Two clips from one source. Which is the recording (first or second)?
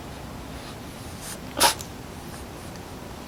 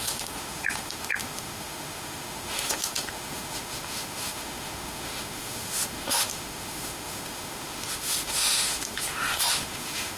first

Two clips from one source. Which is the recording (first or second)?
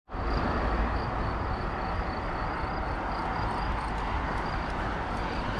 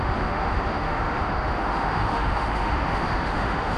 first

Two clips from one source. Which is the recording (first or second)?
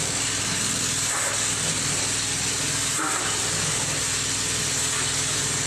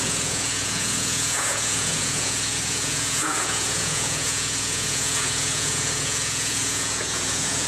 first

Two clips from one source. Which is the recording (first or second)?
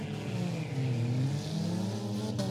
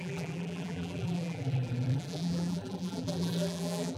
first